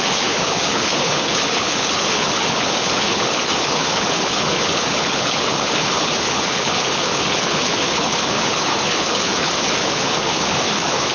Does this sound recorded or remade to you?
remade